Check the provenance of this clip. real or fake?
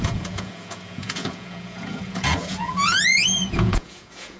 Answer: fake